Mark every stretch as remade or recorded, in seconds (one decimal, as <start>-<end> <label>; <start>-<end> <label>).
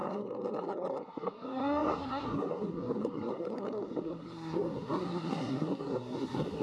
0.0-6.6 remade